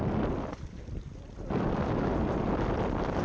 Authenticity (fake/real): real